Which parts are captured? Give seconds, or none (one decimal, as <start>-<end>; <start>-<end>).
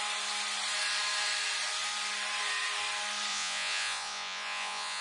0.0-3.3